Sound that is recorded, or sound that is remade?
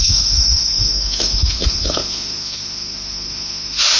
remade